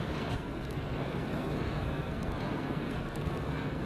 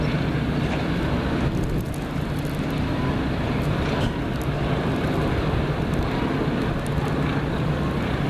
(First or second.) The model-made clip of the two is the first